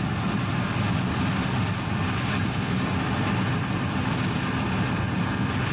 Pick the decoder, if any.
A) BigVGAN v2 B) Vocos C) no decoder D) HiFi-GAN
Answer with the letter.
C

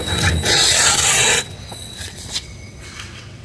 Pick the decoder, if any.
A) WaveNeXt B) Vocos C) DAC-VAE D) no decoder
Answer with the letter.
A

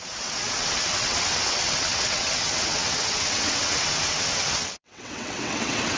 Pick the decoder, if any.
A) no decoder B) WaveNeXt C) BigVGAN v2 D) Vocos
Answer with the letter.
B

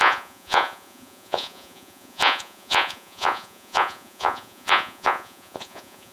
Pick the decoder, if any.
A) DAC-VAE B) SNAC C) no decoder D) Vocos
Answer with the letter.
D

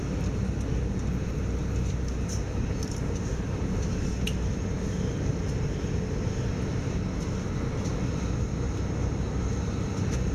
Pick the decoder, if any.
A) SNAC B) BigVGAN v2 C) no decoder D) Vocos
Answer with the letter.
C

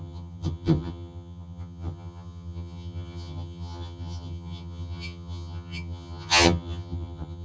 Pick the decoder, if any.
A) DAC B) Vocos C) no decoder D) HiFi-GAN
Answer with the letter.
D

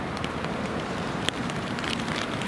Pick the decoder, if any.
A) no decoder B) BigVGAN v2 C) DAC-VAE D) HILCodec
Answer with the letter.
B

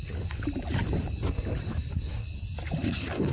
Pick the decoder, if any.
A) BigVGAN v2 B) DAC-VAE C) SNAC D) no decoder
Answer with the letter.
D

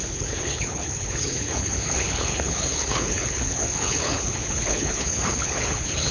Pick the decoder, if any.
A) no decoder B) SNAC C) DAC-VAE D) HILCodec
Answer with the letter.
D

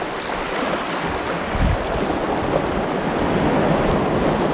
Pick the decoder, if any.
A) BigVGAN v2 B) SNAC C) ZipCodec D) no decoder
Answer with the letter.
D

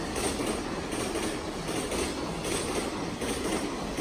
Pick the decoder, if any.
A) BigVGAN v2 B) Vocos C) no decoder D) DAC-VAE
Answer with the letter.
C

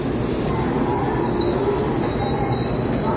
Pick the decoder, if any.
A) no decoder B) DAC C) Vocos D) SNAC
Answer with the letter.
A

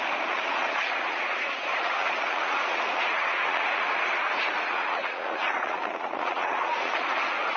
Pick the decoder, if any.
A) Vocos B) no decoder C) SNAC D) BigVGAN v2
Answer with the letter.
A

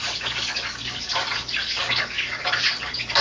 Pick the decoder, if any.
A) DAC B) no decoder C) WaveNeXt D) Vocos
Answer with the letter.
A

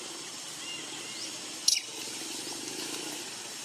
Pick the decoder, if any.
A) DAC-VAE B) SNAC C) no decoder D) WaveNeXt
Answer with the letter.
C